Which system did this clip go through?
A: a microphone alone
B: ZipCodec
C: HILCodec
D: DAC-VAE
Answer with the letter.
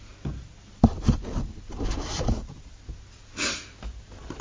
A